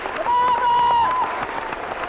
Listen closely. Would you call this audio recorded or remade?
recorded